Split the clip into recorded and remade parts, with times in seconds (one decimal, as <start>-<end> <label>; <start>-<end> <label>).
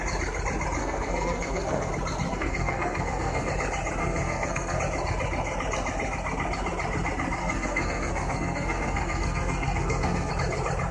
0.0-0.8 recorded; 0.8-1.9 remade; 1.9-2.3 recorded; 2.3-3.5 remade; 3.5-4.0 recorded; 4.0-4.8 remade; 4.8-7.4 recorded; 7.4-10.3 remade; 10.3-10.9 recorded